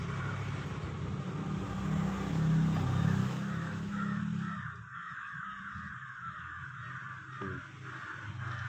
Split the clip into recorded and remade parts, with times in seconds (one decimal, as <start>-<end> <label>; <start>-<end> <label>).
0.0-3.2 recorded; 3.2-4.2 remade; 4.2-4.9 recorded; 4.9-5.6 remade; 5.6-6.0 recorded; 6.0-6.8 remade; 6.8-8.7 recorded